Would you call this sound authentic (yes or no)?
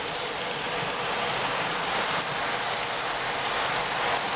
yes